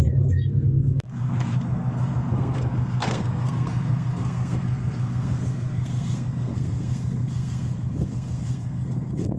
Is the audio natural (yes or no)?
no